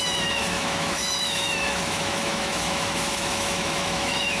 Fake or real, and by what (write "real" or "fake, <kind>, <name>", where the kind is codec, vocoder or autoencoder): fake, autoencoder, DAC-VAE